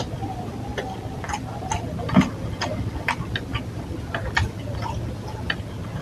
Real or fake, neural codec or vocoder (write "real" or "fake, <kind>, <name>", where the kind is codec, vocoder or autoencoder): real